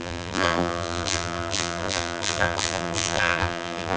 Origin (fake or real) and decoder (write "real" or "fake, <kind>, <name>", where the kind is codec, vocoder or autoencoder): fake, vocoder, BigVGAN v2